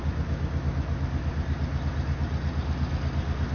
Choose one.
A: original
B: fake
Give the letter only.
A